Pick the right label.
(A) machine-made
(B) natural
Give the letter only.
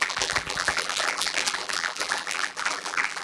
A